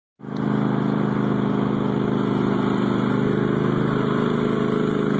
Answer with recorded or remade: recorded